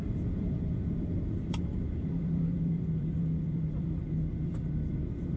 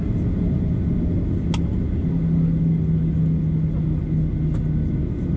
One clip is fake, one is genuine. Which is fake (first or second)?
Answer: first